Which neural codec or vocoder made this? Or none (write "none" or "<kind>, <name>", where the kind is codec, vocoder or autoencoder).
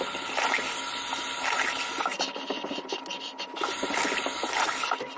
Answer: none